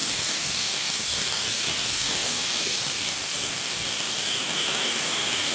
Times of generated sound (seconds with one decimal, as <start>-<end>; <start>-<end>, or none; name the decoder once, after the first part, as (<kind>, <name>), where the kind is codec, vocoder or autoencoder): 0.0-5.5 (codec, DAC)

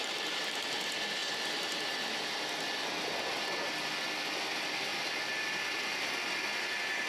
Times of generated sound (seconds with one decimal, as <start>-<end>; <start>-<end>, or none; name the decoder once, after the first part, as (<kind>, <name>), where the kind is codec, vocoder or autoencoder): none